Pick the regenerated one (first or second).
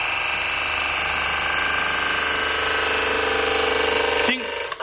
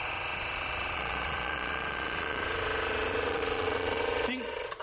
second